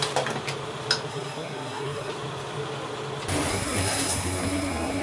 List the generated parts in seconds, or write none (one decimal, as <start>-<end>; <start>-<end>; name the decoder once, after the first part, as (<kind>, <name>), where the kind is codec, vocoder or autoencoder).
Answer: 1.1-2.1 (codec, SNAC); 3.5-5.0